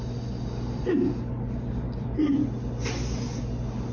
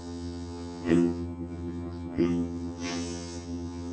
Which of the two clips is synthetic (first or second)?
second